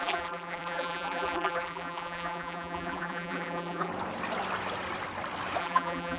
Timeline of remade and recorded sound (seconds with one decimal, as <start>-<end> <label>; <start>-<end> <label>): 0.0-3.9 remade; 3.9-5.6 recorded; 5.6-6.2 remade